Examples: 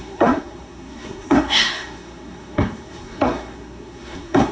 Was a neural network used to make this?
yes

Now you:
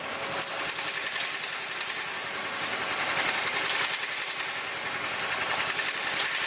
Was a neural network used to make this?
no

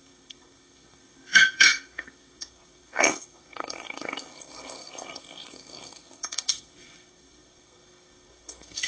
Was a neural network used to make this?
yes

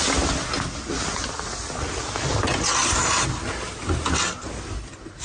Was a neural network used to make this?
no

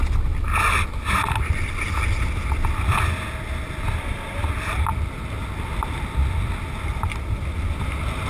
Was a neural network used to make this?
no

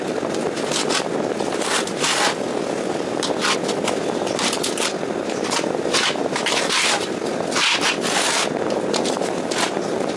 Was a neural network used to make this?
no